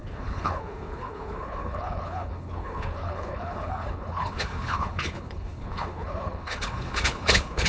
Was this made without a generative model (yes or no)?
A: no